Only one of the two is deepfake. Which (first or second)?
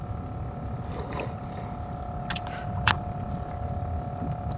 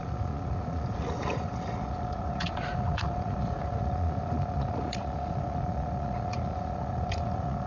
second